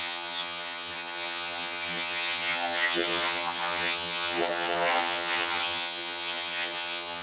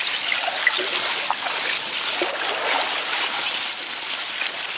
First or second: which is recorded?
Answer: second